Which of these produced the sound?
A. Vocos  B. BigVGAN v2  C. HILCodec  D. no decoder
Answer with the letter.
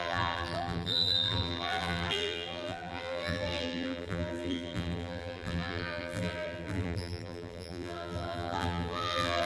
B